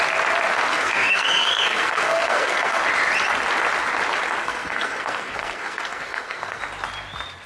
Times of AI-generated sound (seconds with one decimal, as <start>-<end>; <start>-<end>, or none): 0.7-2.8; 4.4-6.6